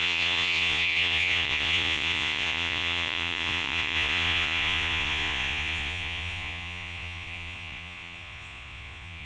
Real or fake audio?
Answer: fake